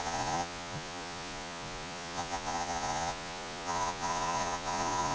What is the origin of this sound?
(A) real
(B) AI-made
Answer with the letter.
B